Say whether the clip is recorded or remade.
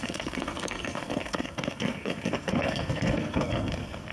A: remade